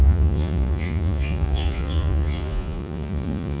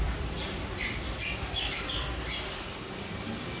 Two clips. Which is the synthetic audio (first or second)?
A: first